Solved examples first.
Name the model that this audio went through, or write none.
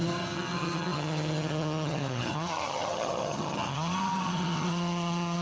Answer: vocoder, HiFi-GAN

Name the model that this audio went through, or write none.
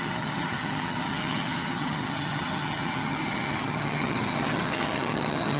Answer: vocoder, HiFi-GAN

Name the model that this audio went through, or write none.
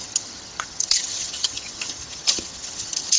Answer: vocoder, HiFi-GAN